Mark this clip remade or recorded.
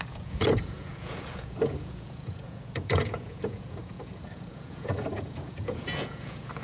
remade